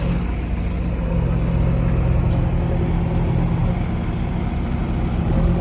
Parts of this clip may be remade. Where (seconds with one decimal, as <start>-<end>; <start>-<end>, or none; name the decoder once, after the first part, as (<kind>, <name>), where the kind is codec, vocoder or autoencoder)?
none